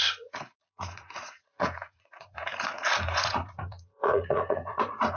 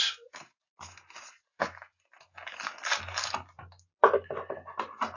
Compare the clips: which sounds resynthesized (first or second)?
first